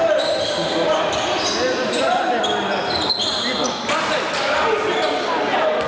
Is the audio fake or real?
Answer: fake